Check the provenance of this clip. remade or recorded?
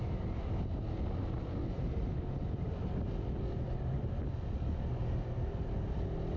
recorded